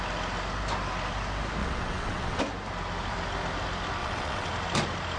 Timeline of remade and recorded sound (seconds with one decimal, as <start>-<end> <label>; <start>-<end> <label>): 0.0-1.6 recorded; 1.6-2.4 remade; 2.4-4.0 recorded; 4.0-4.5 remade; 4.5-5.2 recorded